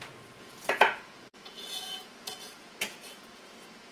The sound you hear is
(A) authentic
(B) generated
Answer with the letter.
B